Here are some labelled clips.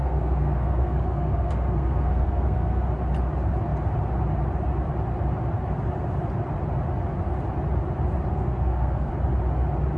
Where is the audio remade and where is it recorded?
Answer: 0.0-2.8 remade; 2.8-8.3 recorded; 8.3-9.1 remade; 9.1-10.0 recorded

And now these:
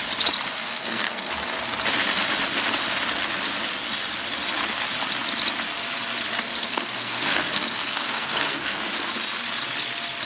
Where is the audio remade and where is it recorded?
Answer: 0.0-0.6 recorded; 0.6-1.3 remade; 1.3-6.6 recorded; 6.6-8.8 remade; 8.8-10.3 recorded